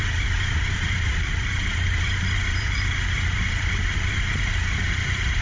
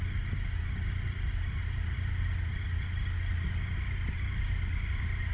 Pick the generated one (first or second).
first